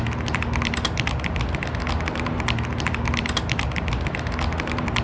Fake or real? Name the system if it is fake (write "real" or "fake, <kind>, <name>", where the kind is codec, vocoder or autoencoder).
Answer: real